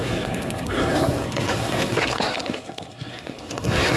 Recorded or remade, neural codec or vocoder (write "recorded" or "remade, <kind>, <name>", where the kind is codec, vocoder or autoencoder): remade, codec, SNAC